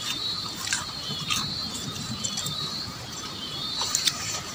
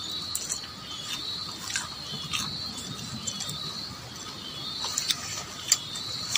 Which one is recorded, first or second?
second